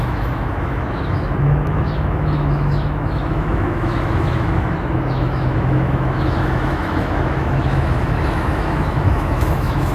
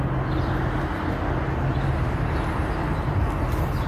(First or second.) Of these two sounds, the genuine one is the second